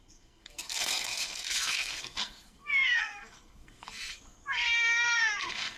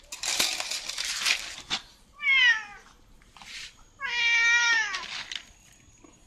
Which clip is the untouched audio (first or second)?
second